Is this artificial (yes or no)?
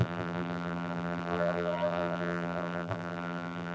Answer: yes